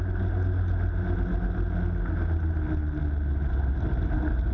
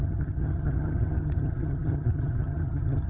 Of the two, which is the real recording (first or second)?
first